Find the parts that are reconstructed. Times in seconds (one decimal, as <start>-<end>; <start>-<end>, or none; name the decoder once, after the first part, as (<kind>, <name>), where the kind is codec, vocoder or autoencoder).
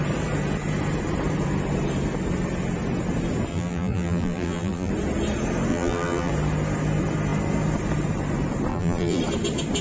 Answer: 3.5-4.9 (vocoder, BigVGAN v2); 5.7-6.3; 8.7-9.2